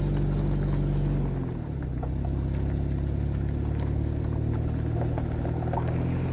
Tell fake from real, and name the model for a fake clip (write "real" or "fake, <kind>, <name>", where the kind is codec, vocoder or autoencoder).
real